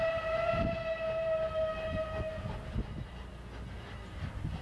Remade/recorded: recorded